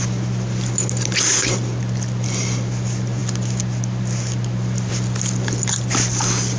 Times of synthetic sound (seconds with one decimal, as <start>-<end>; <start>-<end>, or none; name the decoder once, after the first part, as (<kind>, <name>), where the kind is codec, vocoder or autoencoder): none